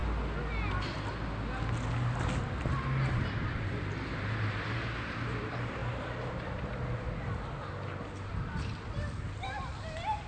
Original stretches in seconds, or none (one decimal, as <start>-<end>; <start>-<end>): 0.0-3.1; 5.8-10.3